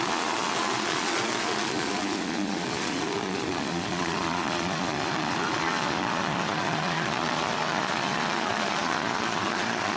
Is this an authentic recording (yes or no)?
no